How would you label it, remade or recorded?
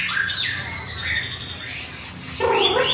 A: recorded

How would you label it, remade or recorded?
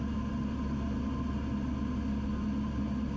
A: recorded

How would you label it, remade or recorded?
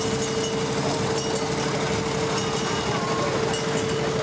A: recorded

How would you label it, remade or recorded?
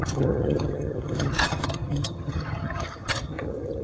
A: remade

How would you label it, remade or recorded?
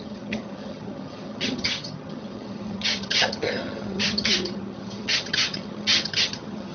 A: remade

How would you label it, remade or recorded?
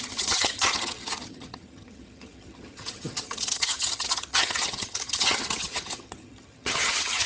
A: remade